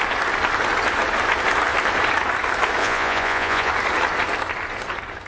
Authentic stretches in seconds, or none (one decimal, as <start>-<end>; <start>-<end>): 0.0-2.8; 3.7-5.3